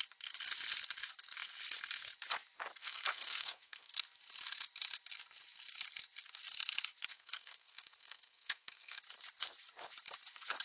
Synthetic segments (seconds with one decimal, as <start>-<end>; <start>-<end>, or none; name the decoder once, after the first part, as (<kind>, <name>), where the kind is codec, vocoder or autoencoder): 2.8-3.9 (codec, SNAC); 7.1-9.0